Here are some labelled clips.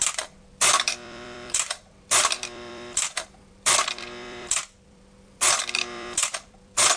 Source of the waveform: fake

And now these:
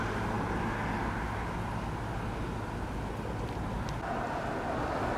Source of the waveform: real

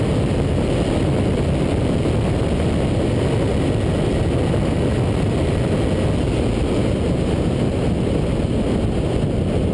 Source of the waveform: real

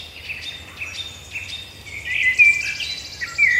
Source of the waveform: real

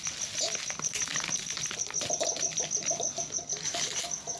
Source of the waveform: real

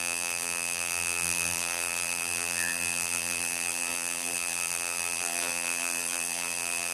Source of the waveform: fake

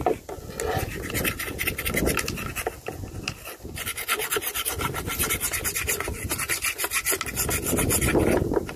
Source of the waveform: real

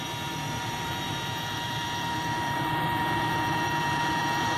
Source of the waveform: fake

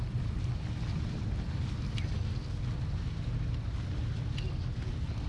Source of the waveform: real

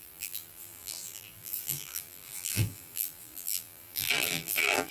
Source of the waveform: fake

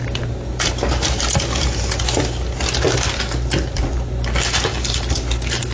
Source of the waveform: real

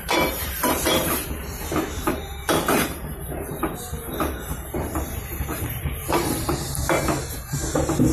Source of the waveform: fake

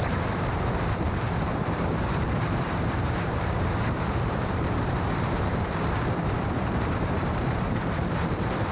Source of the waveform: fake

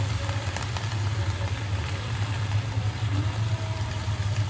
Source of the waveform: fake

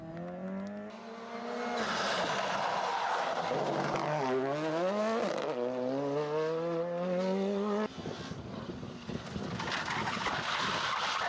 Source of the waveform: real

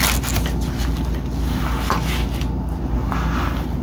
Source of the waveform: real